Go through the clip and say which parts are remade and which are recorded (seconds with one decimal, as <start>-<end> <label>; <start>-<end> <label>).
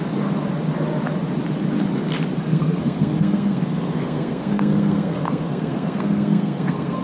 0.0-2.5 recorded; 2.5-7.0 remade